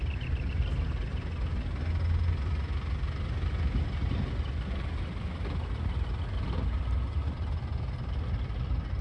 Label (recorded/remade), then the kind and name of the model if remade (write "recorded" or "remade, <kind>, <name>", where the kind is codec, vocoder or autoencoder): recorded